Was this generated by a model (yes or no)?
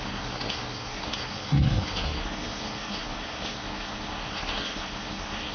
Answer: yes